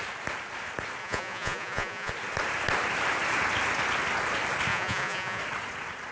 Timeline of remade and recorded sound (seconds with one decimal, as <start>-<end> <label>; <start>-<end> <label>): 0.0-1.0 recorded; 1.0-2.1 remade; 2.1-4.7 recorded; 4.7-5.4 remade; 5.4-6.1 recorded